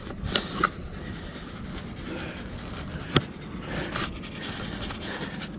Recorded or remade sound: recorded